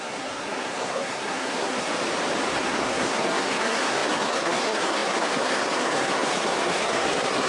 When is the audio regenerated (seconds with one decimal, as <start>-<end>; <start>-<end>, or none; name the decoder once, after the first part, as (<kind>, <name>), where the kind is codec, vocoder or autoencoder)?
0.0-1.9 (codec, SNAC); 2.6-7.5